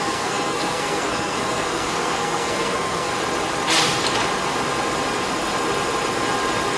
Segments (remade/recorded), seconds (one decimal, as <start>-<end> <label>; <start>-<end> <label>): 0.0-3.1 remade; 3.1-6.8 recorded